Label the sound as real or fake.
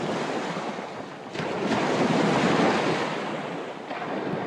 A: real